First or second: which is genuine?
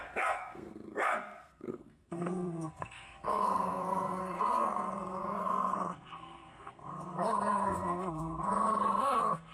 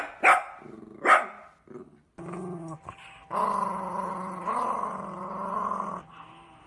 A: second